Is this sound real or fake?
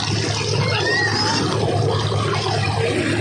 real